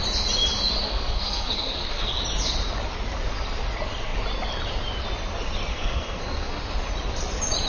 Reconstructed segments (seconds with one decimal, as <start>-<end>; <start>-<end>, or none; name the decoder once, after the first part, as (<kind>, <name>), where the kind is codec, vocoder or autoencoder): 0.8-2.2 (codec, SNAC); 5.7-6.6